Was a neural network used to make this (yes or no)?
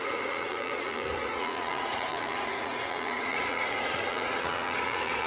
yes